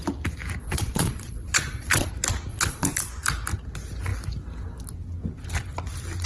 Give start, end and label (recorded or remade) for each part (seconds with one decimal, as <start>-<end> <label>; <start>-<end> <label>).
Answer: 0.0-0.6 recorded; 0.6-2.1 remade; 2.1-2.5 recorded; 2.5-3.1 remade; 3.1-6.3 recorded